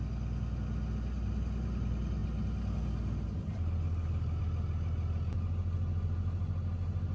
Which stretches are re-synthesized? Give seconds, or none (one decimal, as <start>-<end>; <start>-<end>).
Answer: none